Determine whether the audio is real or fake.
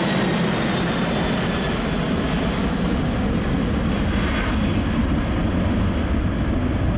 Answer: real